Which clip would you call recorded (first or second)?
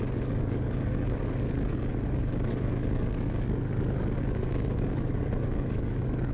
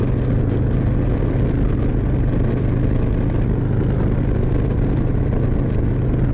second